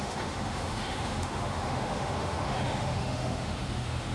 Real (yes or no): no